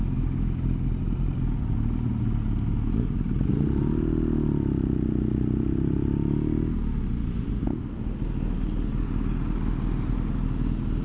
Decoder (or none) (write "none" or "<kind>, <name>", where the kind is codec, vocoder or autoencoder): none